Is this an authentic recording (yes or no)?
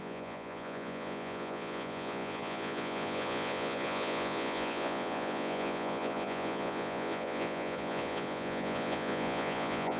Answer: no